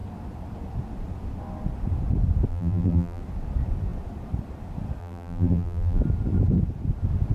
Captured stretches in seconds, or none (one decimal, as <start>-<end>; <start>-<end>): 0.0-2.5; 3.2-5.0; 6.0-7.3